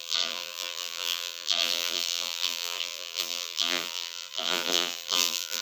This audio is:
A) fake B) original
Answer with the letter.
A